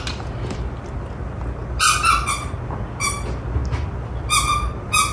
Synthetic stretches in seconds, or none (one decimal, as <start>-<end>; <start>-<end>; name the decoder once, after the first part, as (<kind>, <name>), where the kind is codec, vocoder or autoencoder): none